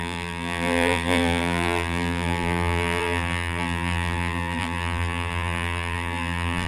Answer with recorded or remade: remade